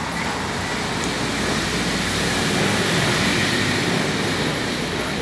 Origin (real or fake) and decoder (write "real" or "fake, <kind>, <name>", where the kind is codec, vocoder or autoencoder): real